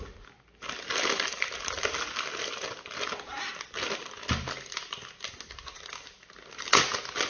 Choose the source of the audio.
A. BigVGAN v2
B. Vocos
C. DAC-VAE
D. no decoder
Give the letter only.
D